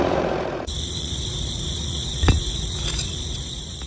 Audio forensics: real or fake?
fake